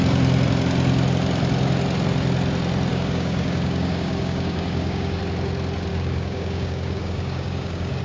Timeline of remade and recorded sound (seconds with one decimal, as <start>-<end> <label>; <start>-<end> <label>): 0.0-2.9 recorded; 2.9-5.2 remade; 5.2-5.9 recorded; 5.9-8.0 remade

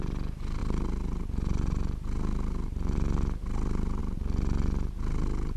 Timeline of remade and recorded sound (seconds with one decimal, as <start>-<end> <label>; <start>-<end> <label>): 0.0-5.6 recorded

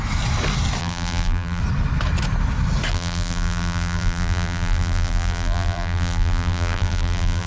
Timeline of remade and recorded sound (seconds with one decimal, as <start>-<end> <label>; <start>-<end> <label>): 0.0-0.8 recorded; 0.8-1.6 remade; 1.6-2.9 recorded; 2.9-7.5 remade

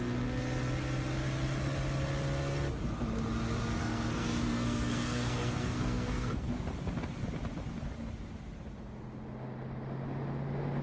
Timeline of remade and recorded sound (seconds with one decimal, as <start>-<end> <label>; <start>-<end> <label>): 0.0-3.8 recorded; 3.8-6.5 remade; 6.5-10.8 recorded